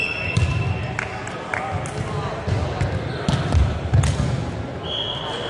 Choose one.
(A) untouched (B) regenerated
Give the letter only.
A